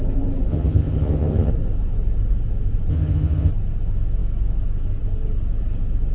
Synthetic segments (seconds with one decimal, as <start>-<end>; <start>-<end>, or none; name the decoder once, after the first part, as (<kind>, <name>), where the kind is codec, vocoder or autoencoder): 0.5-1.5 (vocoder, HiFi-GAN); 2.9-3.5